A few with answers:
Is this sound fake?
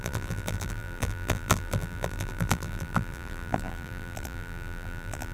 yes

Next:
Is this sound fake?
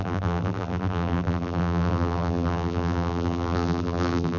yes